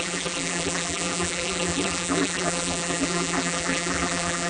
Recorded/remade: remade